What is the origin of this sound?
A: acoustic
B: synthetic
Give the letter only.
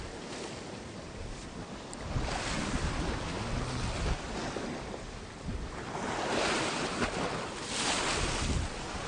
A